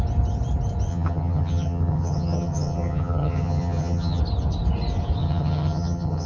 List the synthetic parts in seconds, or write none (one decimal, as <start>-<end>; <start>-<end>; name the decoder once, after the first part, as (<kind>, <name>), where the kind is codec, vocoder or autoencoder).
0.9-4.2 (vocoder, HiFi-GAN); 5.2-6.3